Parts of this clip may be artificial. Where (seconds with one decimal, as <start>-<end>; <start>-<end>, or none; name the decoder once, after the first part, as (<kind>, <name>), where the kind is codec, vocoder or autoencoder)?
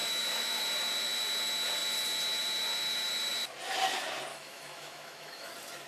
0.0-0.6 (autoencoder, DAC-VAE); 4.3-5.5